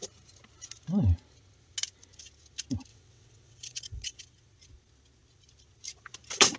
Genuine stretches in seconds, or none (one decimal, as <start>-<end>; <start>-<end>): 0.0-2.9; 4.2-6.6